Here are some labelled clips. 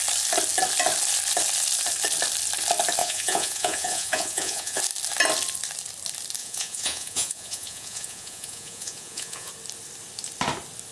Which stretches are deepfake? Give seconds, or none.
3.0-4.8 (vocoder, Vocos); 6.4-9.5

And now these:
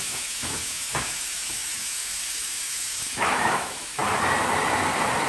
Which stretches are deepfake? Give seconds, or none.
0.0-4.0 (autoencoder, DAC-VAE)

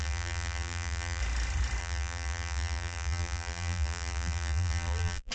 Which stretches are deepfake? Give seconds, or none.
0.0-1.2 (vocoder, BigVGAN v2); 1.8-5.3

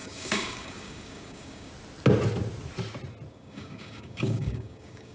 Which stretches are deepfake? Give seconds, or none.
0.0-1.7 (codec, DAC); 3.3-5.1

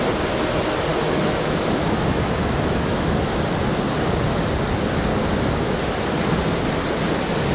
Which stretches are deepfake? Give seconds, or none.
0.9-3.0 (autoencoder, DAC-VAE)